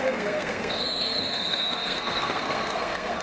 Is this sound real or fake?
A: fake